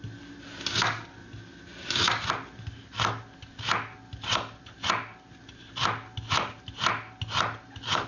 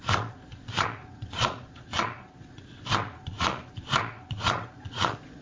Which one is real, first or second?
first